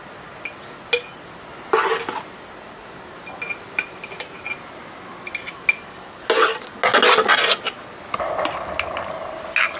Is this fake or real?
real